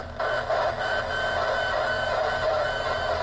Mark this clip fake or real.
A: real